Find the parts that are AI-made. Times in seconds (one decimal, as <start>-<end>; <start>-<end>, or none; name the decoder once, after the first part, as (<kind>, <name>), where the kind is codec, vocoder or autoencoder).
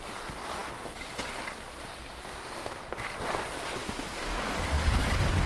none